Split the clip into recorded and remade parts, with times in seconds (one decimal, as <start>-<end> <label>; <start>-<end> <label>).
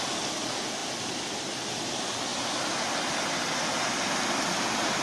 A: 0.0-5.0 recorded